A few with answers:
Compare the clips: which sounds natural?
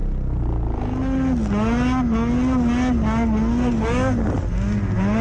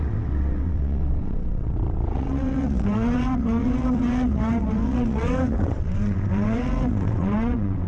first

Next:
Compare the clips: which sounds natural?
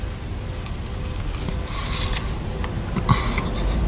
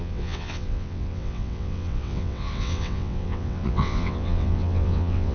first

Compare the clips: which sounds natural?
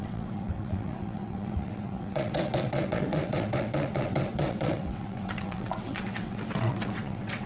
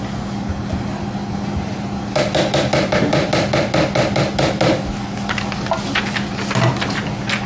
second